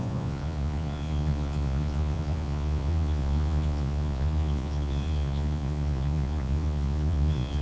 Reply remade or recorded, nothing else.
remade